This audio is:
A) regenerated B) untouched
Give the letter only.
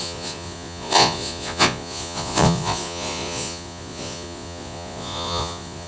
A